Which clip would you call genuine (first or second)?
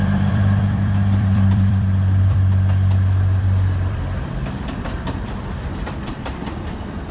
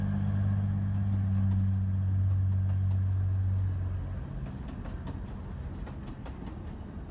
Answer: second